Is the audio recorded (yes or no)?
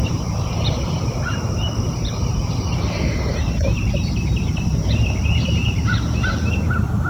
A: no